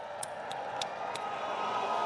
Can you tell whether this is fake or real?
fake